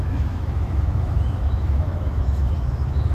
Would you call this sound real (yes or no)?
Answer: no